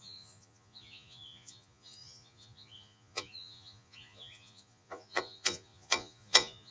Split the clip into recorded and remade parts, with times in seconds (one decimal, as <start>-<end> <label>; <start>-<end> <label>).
0.0-6.7 remade